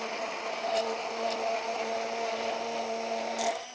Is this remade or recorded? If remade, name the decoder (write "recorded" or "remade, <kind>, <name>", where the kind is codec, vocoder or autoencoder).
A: recorded